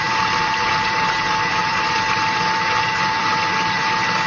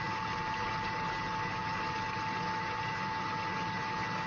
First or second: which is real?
second